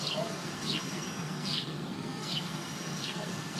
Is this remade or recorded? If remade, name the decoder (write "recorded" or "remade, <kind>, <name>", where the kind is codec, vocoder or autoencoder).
remade, codec, SNAC